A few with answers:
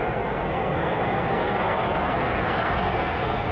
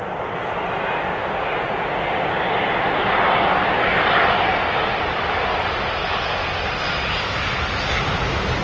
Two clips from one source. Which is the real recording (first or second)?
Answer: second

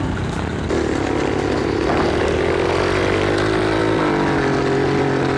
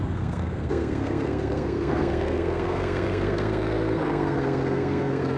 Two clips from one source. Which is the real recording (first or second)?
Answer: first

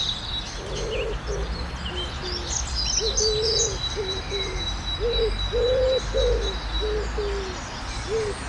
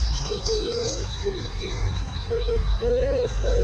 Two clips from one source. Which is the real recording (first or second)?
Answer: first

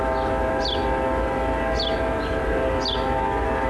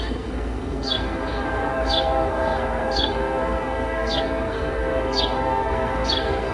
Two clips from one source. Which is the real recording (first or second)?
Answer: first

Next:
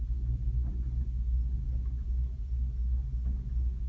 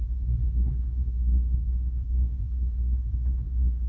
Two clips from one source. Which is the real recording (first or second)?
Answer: first